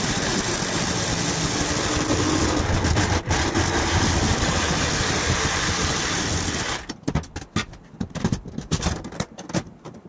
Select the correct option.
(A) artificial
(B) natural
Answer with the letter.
B